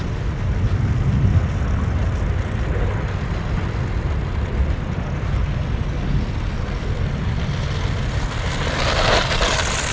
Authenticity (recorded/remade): recorded